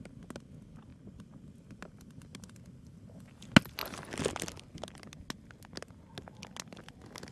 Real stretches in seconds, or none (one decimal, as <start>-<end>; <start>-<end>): 0.0-7.3